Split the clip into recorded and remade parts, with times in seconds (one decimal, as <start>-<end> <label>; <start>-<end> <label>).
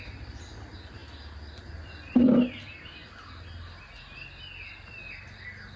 0.0-5.8 recorded